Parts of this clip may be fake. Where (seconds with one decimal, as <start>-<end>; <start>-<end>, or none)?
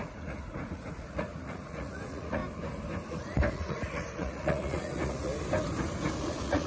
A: 0.0-2.4; 3.1-5.3; 6.2-6.7